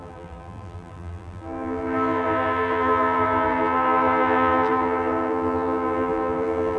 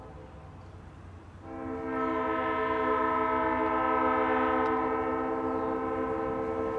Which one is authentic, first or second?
second